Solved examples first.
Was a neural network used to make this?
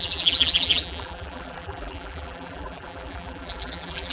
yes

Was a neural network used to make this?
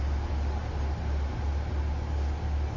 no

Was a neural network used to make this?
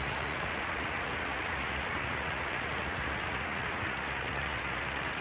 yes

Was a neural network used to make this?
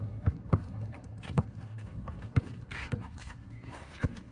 yes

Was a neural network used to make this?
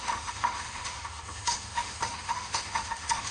yes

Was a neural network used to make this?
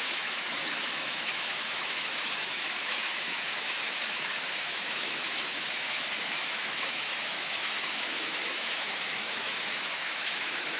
yes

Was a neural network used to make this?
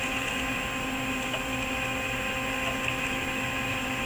no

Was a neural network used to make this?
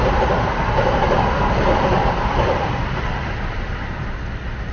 no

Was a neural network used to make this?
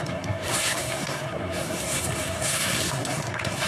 yes